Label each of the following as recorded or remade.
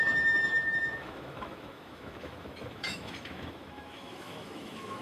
remade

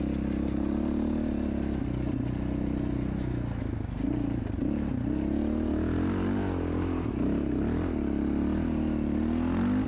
recorded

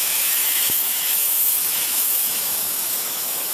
remade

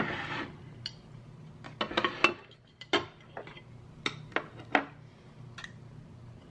recorded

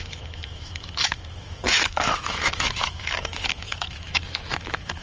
remade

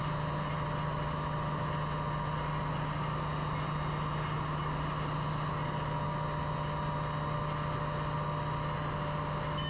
recorded